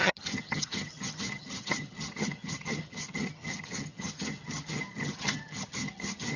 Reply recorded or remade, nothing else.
remade